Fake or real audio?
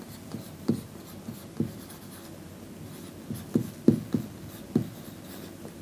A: real